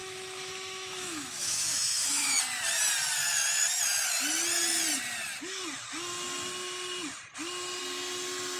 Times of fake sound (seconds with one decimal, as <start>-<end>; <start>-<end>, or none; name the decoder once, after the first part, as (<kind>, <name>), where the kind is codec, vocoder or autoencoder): 0.0-2.4 (autoencoder, DAC-VAE)